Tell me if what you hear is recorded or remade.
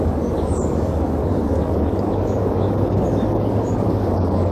remade